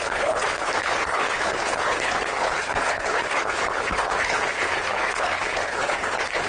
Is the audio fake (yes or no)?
yes